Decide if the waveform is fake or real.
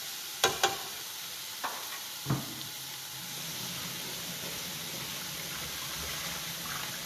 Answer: real